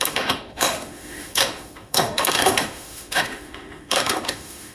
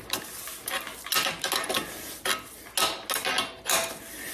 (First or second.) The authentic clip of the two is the second